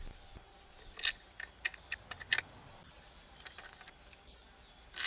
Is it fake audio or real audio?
real